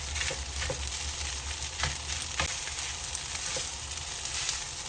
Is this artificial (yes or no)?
no